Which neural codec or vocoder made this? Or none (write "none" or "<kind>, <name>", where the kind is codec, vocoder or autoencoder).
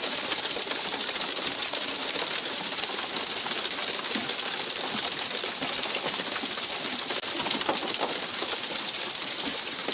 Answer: none